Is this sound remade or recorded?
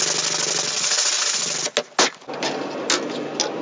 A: recorded